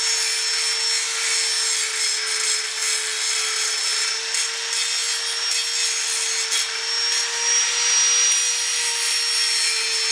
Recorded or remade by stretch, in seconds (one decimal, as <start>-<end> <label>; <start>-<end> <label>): 0.0-10.1 recorded